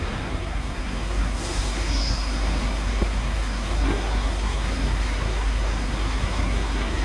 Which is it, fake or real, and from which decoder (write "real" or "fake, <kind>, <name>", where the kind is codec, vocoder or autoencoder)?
fake, codec, SNAC